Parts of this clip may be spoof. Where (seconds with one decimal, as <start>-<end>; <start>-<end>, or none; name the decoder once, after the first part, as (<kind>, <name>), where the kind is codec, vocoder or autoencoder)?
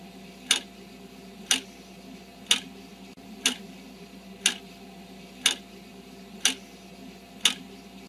none